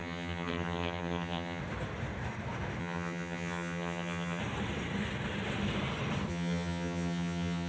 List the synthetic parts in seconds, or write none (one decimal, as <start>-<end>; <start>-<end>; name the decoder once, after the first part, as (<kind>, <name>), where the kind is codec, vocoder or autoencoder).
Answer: 0.0-1.6 (vocoder, HiFi-GAN); 2.8-4.4; 6.3-7.7

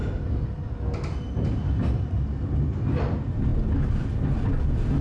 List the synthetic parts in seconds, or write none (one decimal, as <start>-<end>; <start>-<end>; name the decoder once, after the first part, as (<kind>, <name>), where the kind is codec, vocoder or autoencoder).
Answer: none

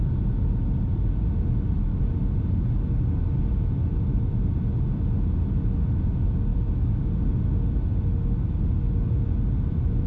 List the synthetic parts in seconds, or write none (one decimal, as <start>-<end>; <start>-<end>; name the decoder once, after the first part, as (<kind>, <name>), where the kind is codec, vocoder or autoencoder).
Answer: 6.5-7.1 (autoencoder, DAC-VAE)